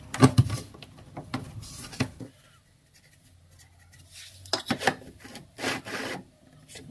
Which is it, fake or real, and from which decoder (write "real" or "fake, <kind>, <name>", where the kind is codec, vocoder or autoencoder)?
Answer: real